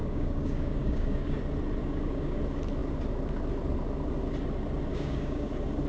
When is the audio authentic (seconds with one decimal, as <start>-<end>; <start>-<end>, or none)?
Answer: 1.4-1.8; 2.4-4.9; 5.5-5.9